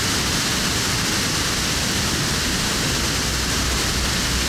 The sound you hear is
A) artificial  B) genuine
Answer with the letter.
B